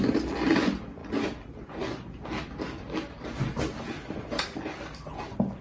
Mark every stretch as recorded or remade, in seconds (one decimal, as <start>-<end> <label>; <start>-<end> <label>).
0.0-5.6 recorded